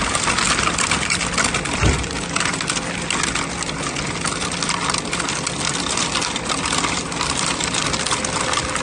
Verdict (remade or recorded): recorded